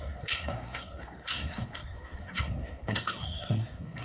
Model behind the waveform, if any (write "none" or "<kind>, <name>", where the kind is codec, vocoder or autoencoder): codec, SNAC